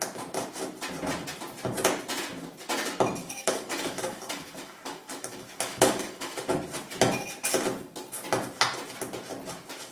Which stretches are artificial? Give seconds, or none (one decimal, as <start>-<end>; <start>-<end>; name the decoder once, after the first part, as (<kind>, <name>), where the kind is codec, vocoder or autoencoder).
3.2-6.4 (codec, DAC)